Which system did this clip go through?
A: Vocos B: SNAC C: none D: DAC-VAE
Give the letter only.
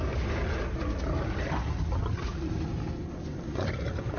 C